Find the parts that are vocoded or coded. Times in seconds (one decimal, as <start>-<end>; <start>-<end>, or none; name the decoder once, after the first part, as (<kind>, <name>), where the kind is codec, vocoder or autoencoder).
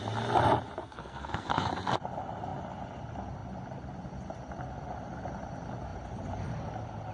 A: 0.8-1.7 (codec, SNAC)